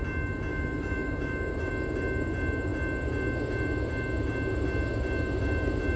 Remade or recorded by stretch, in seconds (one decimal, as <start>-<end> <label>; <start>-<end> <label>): 0.0-0.5 recorded; 0.5-1.7 remade; 1.7-6.0 recorded